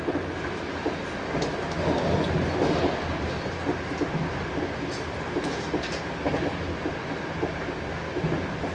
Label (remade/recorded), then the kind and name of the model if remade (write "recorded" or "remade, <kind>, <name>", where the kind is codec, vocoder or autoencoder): recorded